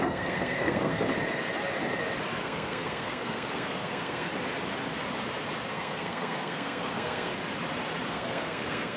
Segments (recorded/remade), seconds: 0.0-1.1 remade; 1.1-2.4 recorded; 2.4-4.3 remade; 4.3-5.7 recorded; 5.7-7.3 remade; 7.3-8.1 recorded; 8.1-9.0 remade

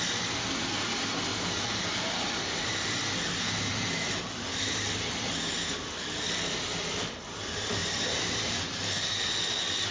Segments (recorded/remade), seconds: 0.0-1.3 recorded; 1.3-3.0 remade; 3.0-4.5 recorded; 4.5-5.2 remade; 5.2-7.8 recorded; 7.8-8.6 remade; 8.6-9.9 recorded